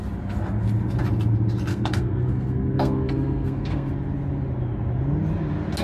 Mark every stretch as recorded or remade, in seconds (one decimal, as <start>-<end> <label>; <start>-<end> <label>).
0.0-1.7 recorded; 1.7-3.9 remade; 3.9-5.8 recorded